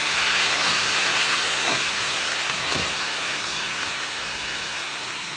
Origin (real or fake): fake